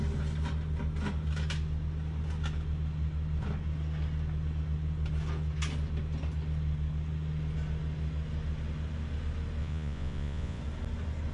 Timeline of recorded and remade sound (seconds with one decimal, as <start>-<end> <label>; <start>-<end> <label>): 0.0-9.6 recorded; 9.6-10.6 remade; 10.6-11.3 recorded